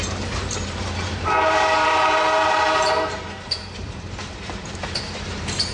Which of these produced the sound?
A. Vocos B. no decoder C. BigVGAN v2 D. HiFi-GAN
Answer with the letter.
C